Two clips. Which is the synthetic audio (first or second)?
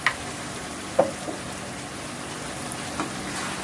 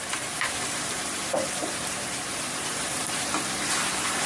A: second